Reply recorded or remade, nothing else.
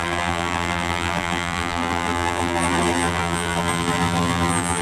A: remade